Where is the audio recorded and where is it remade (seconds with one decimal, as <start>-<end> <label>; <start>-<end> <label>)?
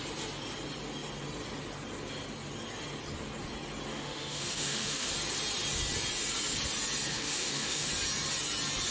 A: 0.0-3.9 recorded; 3.9-5.1 remade; 5.1-7.1 recorded; 7.1-7.9 remade; 7.9-8.9 recorded